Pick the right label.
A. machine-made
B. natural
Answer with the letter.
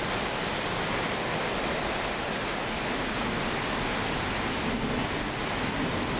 B